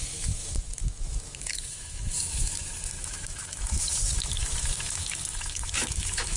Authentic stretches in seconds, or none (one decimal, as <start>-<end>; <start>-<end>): none